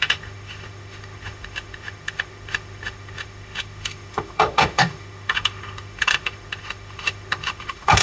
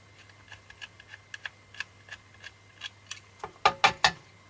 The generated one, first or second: first